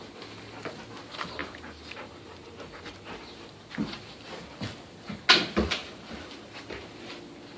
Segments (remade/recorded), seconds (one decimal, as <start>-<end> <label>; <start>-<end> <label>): 0.0-1.4 recorded; 1.4-4.1 remade; 4.1-5.8 recorded; 5.8-7.1 remade; 7.1-7.6 recorded

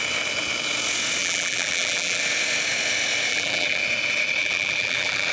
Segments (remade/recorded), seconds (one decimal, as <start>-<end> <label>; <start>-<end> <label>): 0.0-1.2 recorded; 1.2-2.2 remade; 2.2-3.3 recorded; 3.3-3.8 remade; 3.8-4.4 recorded; 4.4-5.3 remade

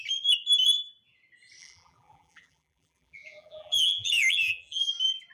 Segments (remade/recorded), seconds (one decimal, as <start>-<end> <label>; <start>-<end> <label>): 0.0-1.6 recorded; 1.6-4.8 remade; 4.8-5.3 recorded